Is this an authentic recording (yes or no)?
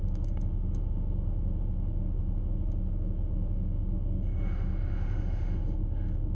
no